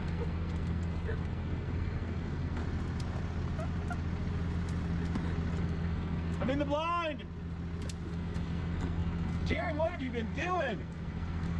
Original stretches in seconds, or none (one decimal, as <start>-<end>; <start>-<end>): 2.6-5.6; 6.5-8.1